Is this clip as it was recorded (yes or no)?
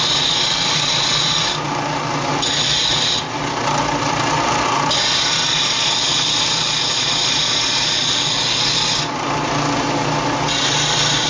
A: yes